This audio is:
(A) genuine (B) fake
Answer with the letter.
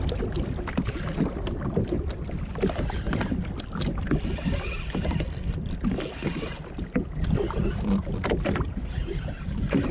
A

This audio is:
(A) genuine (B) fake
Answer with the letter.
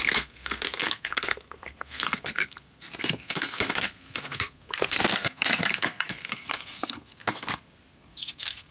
B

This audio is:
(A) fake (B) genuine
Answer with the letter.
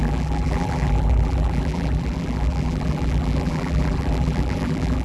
A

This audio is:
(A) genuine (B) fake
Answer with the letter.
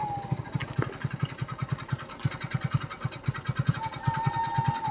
A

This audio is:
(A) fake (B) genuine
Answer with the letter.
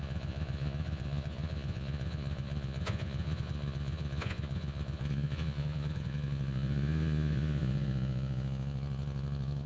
A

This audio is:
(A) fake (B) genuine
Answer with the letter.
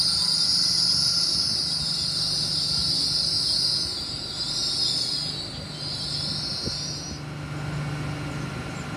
B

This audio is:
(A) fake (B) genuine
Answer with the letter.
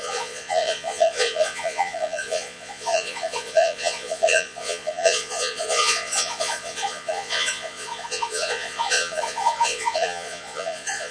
A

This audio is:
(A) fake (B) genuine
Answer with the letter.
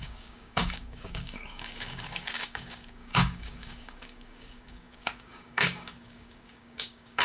A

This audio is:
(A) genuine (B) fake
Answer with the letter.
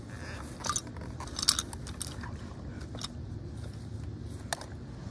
A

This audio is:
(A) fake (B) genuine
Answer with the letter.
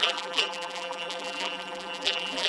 A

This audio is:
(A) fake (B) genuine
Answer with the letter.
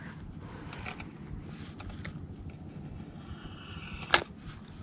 B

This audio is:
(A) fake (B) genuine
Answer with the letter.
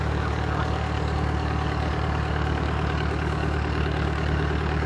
A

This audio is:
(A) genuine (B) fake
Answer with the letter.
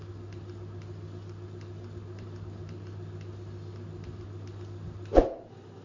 A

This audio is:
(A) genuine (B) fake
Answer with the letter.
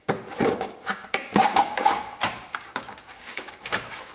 B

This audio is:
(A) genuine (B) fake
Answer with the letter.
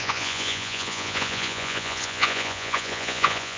B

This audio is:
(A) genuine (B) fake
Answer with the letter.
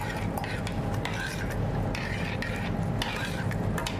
A